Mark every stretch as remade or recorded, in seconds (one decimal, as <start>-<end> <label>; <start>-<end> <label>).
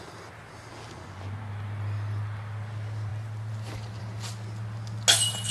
0.0-5.5 recorded